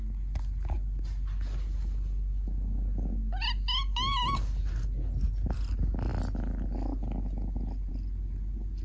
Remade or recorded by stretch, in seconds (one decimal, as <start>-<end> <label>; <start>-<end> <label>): 0.0-8.8 recorded